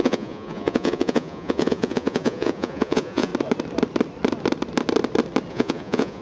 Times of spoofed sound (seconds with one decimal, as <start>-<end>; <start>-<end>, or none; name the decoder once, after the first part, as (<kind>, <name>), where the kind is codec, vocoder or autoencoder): 0.0-3.3 (vocoder, Vocos); 5.5-6.2